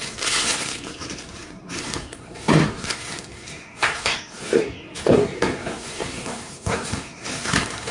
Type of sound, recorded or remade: remade